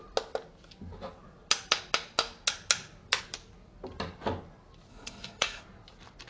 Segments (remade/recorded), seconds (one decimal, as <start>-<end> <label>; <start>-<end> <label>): 0.0-4.9 recorded; 4.9-5.6 remade; 5.6-6.3 recorded